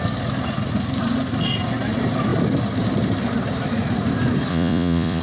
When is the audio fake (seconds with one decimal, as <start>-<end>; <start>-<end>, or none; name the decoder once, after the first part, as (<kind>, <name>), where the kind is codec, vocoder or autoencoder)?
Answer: 4.5-5.2 (vocoder, Vocos)